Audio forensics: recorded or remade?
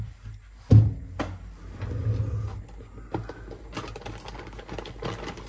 recorded